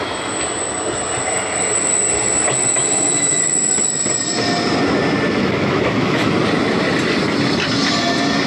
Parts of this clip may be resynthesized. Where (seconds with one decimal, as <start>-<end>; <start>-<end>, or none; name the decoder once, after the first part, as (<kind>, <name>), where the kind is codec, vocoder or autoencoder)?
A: 2.7-3.4 (autoencoder, DAC-VAE); 5.4-6.3